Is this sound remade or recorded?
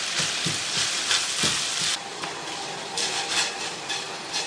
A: remade